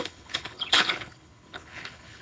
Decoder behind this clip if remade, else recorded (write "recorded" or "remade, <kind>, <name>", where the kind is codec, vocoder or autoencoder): remade, codec, HILCodec